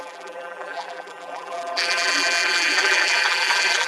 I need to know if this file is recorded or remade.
remade